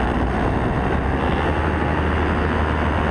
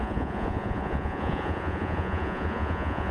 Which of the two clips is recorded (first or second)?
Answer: first